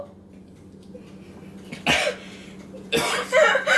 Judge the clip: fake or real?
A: real